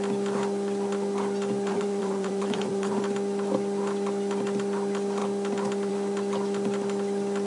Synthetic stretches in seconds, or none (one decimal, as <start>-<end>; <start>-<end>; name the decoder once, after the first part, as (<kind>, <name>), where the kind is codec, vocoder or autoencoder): 1.7-3.0 (vocoder, Vocos)